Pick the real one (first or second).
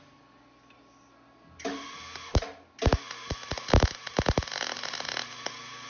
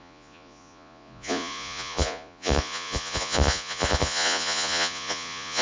first